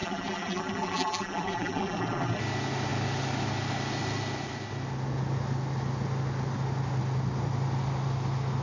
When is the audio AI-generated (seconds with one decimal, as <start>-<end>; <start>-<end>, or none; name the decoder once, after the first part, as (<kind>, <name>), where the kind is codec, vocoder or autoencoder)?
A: 0.0-2.4 (vocoder, BigVGAN v2)